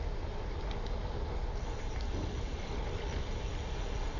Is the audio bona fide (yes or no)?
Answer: yes